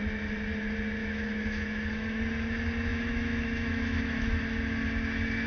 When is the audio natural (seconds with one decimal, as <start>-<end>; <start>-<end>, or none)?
0.0-1.0; 2.2-2.9; 4.4-5.5